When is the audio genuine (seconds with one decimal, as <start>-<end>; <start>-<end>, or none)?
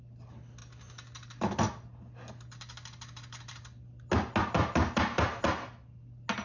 0.0-6.4